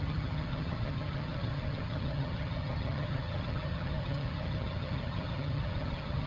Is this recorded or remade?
remade